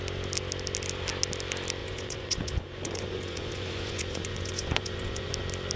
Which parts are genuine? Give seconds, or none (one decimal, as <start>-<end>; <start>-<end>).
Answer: 0.0-1.8; 5.3-5.8